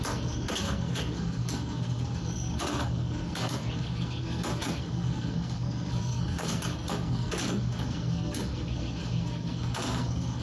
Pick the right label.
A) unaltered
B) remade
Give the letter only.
B